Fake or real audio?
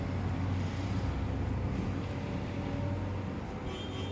real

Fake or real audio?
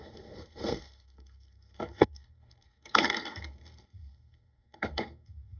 fake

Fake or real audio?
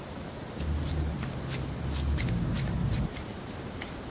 real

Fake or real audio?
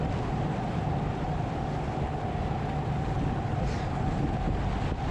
real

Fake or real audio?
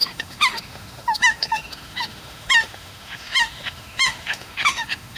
fake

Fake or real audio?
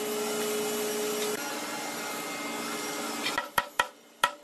real